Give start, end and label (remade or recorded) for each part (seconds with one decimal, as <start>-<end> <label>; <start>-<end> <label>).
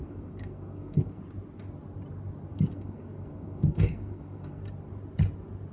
0.0-1.2 remade; 1.2-2.5 recorded; 2.5-4.6 remade; 4.6-5.7 recorded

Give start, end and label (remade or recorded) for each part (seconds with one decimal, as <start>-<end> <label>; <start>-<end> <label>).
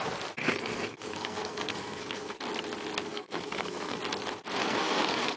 0.0-0.4 recorded; 0.4-2.4 remade; 2.4-3.1 recorded; 3.1-4.0 remade; 4.0-4.6 recorded; 4.6-5.4 remade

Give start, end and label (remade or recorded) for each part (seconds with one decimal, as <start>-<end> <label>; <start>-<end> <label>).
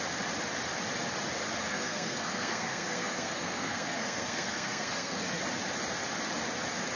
0.0-1.7 recorded; 1.7-5.4 remade; 5.4-7.0 recorded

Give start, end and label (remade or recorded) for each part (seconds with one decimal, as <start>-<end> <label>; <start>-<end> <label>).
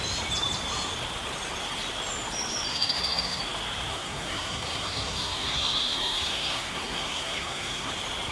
0.0-2.7 recorded; 2.7-3.4 remade; 3.4-3.9 recorded; 3.9-7.9 remade; 7.9-8.3 recorded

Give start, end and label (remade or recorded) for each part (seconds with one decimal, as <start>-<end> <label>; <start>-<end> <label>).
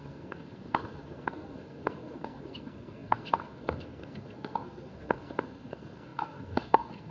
0.0-7.1 remade